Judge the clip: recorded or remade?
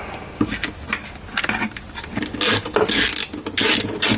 recorded